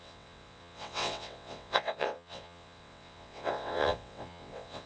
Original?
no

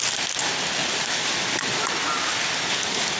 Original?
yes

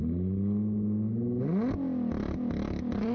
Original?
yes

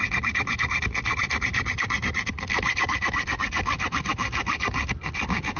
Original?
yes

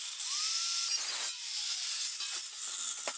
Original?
yes